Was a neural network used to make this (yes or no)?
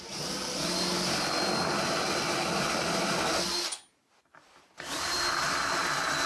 no